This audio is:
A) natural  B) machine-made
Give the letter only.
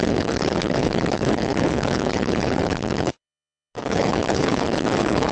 B